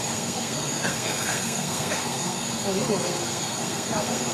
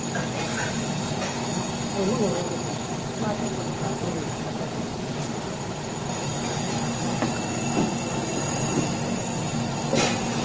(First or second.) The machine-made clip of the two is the first